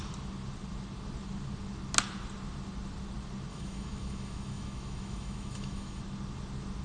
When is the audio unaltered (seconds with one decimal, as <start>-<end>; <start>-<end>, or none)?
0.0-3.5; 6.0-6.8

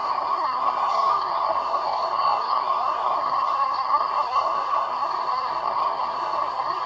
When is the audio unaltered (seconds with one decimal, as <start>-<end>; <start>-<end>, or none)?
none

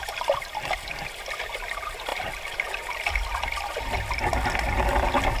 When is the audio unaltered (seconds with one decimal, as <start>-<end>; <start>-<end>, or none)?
0.0-5.4